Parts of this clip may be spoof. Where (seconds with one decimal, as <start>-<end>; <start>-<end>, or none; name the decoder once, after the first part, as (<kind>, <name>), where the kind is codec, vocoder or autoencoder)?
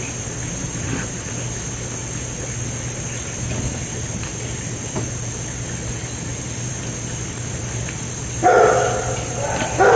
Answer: none